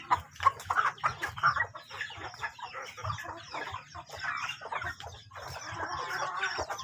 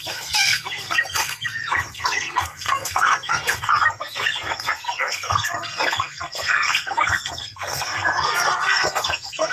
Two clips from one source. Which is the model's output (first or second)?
second